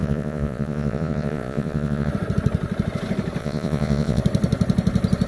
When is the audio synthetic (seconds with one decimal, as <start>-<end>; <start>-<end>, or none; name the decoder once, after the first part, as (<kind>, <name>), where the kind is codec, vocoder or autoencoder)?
0.0-2.1 (vocoder, Vocos); 3.4-4.2